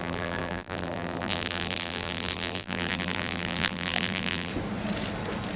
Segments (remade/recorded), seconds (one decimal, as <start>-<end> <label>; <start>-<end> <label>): 0.0-4.5 remade; 4.5-5.6 recorded